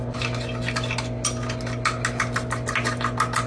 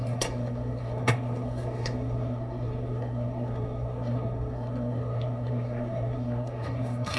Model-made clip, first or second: second